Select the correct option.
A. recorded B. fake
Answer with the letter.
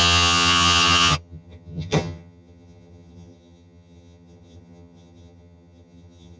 B